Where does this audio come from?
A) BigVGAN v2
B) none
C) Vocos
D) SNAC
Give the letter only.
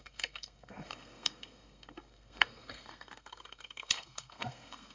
D